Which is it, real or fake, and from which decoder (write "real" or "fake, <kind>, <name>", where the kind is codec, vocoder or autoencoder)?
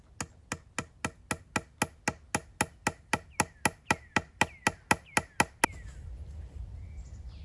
real